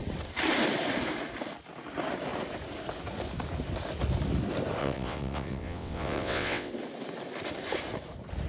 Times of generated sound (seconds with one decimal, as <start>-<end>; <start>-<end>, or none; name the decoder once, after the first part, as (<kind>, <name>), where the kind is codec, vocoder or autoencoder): 4.8-6.7 (vocoder, WaveNeXt)

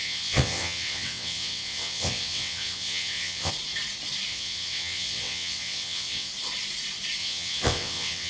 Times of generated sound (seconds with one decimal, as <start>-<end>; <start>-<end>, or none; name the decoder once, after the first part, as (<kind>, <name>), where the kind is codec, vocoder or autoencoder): 0.0-3.5 (vocoder, WaveNeXt); 4.3-6.3; 7.2-8.3

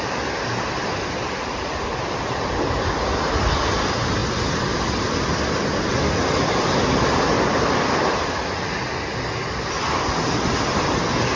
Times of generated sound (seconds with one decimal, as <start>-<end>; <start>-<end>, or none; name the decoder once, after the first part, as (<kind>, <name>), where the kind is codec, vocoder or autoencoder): none

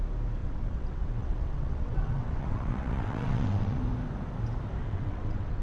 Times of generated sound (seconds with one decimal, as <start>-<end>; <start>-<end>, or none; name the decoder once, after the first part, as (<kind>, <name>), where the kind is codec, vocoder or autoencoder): 0.4-3.8 (vocoder, WaveNeXt); 4.8-5.6

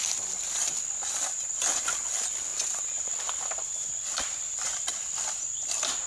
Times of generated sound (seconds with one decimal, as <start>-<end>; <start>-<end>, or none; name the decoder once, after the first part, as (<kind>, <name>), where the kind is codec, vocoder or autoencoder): none

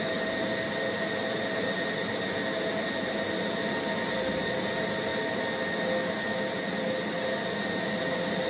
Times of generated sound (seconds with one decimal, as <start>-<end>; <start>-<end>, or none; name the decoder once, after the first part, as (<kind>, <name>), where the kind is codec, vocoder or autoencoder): none